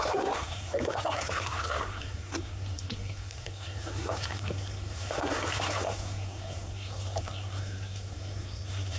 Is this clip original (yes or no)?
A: no